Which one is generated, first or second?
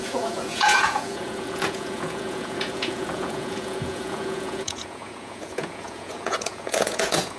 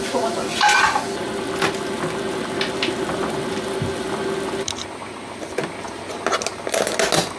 first